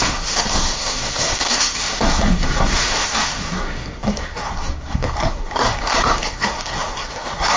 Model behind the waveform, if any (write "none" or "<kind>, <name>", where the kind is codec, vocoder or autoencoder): codec, SNAC